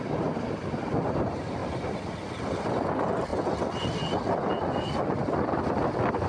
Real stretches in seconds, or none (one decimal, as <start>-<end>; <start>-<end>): 0.0-6.3